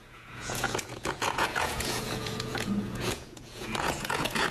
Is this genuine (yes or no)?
no